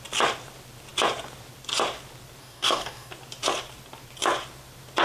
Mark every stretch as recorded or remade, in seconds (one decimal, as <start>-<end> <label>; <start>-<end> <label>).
0.0-2.4 recorded; 2.4-3.1 remade; 3.1-5.0 recorded